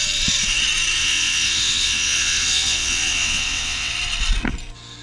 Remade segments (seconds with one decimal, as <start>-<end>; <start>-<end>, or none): 1.0-3.9